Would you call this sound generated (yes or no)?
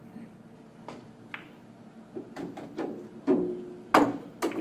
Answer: no